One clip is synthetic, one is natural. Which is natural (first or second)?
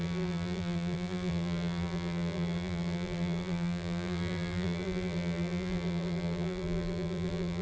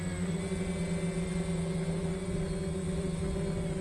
second